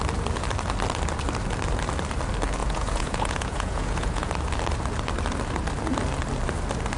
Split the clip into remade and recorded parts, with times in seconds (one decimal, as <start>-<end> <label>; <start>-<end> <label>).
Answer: 0.0-2.6 recorded; 2.6-4.3 remade; 4.3-7.0 recorded